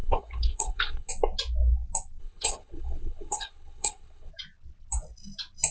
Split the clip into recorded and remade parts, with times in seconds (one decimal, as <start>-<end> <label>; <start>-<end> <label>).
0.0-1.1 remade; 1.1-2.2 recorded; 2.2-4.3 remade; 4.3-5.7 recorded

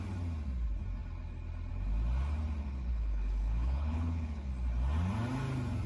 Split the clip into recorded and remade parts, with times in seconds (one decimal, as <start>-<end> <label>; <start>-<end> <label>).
0.0-2.6 recorded; 2.6-4.5 remade; 4.5-5.9 recorded

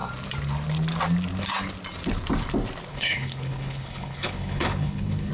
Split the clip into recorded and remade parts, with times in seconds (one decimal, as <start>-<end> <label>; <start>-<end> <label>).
0.0-2.9 recorded; 2.9-5.3 remade